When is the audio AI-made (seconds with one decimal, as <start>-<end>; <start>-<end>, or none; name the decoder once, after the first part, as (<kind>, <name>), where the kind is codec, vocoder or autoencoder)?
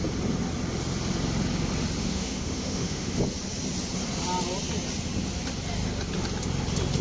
2.0-3.2 (autoencoder, DAC-VAE)